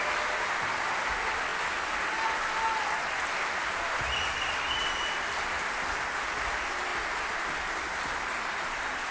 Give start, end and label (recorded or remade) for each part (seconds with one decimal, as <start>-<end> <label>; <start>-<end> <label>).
0.0-1.5 remade; 1.5-3.6 recorded; 3.6-6.9 remade; 6.9-9.1 recorded